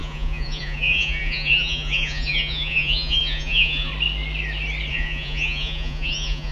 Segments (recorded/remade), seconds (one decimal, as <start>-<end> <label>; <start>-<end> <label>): 0.0-3.9 remade; 3.9-4.9 recorded; 4.9-6.5 remade

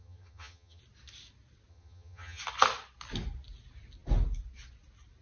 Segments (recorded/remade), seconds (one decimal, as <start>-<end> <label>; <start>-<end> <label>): 0.0-0.8 remade; 0.8-1.7 recorded; 1.7-2.4 remade; 2.4-5.2 recorded

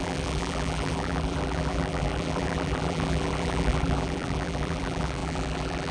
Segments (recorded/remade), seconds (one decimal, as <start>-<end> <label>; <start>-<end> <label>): 0.0-5.9 remade

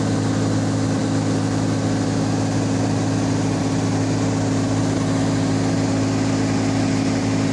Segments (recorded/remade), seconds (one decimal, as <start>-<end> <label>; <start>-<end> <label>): 0.0-7.5 recorded

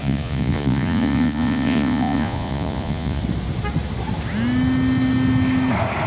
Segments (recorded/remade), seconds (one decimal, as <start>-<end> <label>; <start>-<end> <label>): 0.0-3.2 remade; 3.2-6.1 recorded

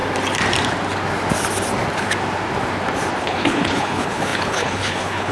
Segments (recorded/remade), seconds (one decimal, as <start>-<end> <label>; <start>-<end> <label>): 0.0-3.2 recorded; 3.2-5.3 remade

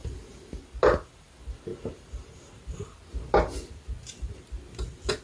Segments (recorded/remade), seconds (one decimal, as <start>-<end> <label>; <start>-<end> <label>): 0.0-0.6 remade; 0.6-5.2 recorded